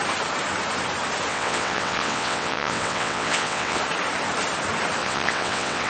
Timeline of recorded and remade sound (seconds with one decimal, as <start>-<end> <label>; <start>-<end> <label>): 0.0-1.3 recorded; 1.3-3.8 remade; 3.8-5.0 recorded; 5.0-5.9 remade